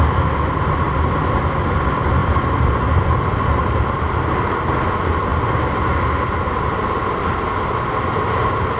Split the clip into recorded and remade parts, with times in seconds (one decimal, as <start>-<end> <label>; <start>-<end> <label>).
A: 0.0-2.2 recorded; 2.2-3.8 remade; 3.8-8.8 recorded